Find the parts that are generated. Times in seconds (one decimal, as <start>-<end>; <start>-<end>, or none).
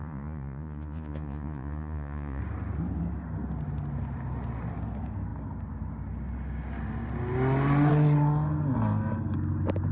0.0-2.4